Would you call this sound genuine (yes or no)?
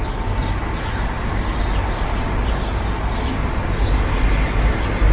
yes